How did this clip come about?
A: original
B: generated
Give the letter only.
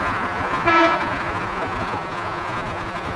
B